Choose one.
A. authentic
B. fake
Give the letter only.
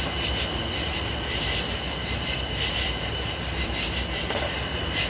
A